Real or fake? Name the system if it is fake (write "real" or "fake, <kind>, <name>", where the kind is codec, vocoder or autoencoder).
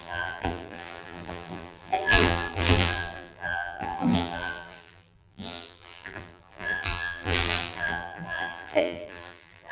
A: fake, vocoder, BigVGAN v2